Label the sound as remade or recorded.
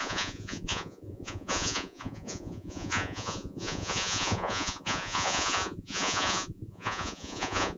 remade